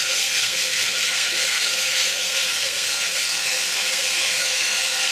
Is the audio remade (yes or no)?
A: yes